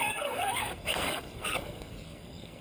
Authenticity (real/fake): fake